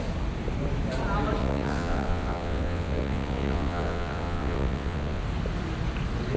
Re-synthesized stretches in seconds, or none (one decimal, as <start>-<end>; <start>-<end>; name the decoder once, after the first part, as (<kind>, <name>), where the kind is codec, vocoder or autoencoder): 1.4-5.2 (vocoder, WaveNeXt)